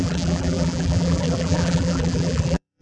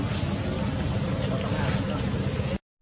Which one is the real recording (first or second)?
second